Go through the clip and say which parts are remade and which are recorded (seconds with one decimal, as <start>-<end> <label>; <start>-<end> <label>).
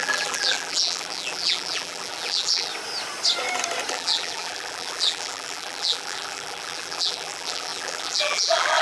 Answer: 0.0-2.7 remade; 2.7-3.9 recorded; 3.9-8.8 remade